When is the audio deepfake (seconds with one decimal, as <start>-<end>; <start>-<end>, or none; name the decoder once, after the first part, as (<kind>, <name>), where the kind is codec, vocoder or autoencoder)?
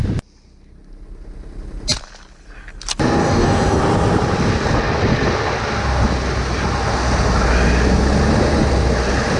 3.2-3.8 (codec, DAC)